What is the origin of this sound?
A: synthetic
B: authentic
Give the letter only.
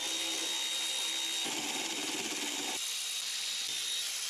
B